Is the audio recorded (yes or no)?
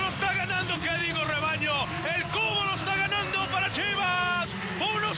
yes